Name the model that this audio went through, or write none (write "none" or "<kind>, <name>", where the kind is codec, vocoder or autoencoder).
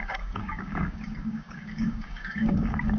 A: codec, DAC